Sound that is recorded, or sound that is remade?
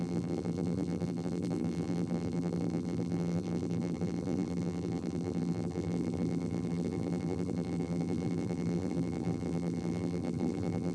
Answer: remade